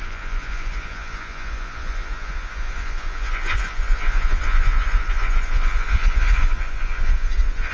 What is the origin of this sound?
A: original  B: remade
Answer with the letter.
B